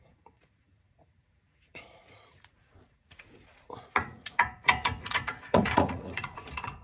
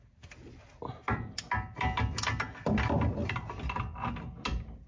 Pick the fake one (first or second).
first